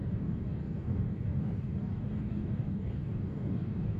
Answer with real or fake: fake